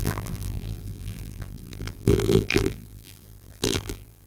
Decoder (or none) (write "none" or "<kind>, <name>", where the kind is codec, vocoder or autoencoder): vocoder, BigVGAN v2